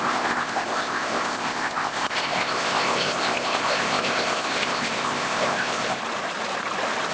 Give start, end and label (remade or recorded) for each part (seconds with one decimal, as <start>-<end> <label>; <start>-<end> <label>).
0.0-6.0 remade; 6.0-7.1 recorded

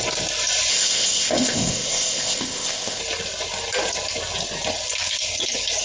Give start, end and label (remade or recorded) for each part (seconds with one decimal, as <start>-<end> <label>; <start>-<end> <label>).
0.0-0.7 recorded; 0.7-3.0 remade; 3.0-5.8 recorded

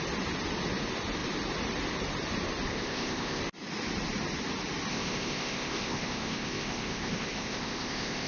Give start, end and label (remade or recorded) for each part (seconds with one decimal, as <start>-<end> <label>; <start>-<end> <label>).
0.0-2.7 recorded; 2.7-3.4 remade; 3.4-4.9 recorded; 4.9-8.3 remade

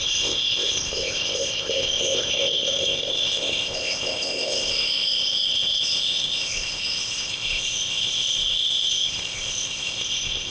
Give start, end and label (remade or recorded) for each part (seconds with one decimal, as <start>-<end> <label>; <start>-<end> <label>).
0.0-10.5 remade

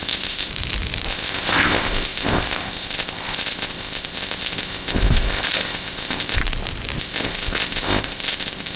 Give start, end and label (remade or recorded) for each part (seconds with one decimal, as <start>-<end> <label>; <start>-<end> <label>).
0.0-0.5 remade; 0.5-1.1 recorded; 1.1-6.4 remade; 6.4-7.0 recorded; 7.0-8.8 remade

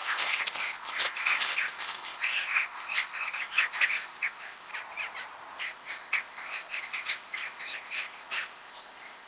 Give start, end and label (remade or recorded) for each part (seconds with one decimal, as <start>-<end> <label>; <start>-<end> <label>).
0.0-4.7 remade; 4.7-5.6 recorded; 5.6-9.3 remade